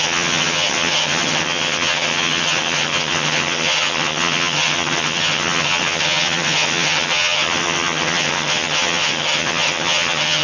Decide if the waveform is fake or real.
fake